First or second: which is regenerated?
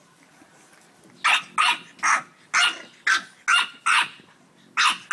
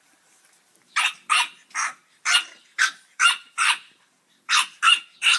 second